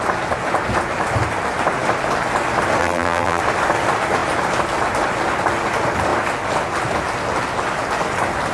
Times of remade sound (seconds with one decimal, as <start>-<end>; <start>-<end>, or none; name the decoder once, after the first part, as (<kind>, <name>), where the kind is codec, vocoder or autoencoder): 2.8-3.4 (vocoder, BigVGAN v2)